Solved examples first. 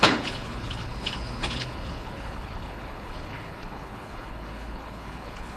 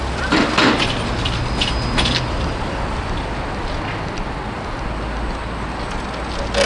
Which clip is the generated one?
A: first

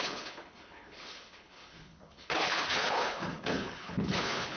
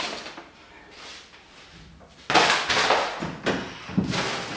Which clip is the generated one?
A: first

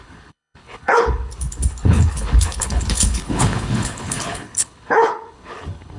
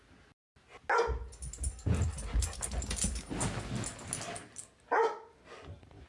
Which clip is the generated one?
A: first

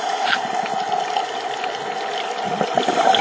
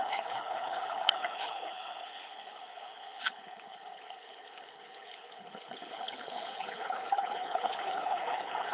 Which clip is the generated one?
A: second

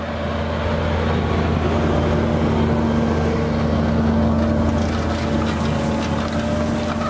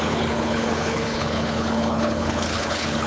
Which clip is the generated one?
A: second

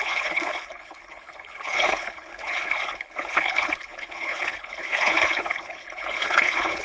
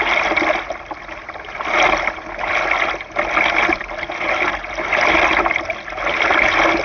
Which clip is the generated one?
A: first